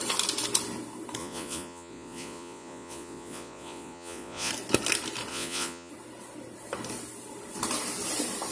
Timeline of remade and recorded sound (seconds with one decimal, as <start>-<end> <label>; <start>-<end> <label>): 0.0-1.2 recorded; 1.2-4.5 remade; 4.5-5.3 recorded; 5.3-5.9 remade; 5.9-8.5 recorded